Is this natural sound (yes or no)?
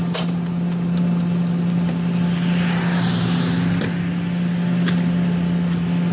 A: yes